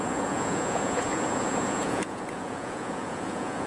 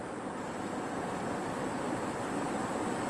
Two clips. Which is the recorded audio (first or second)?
second